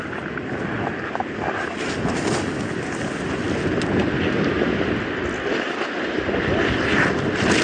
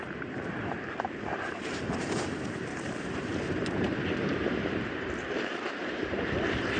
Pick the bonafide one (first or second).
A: first